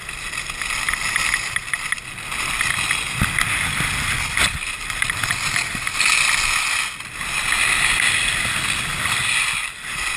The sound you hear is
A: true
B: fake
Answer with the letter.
A